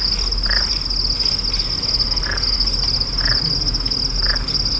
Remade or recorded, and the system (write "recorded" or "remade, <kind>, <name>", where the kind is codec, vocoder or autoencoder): recorded